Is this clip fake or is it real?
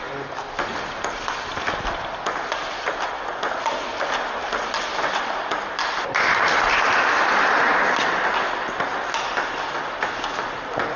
real